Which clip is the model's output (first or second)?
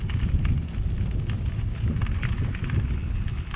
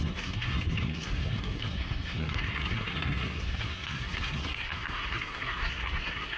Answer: second